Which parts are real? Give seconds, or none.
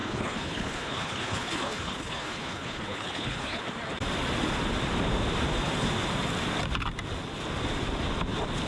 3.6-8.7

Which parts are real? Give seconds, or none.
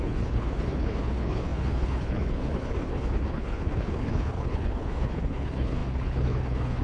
none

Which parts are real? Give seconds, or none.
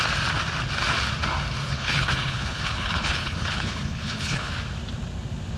0.0-1.6; 4.5-5.6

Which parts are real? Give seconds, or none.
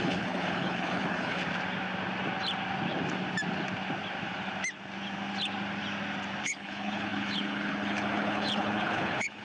1.4-6.4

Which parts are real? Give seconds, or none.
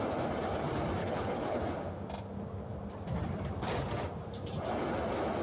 0.0-1.0; 1.6-5.4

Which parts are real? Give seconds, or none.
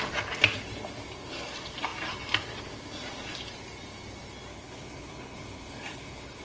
0.0-4.5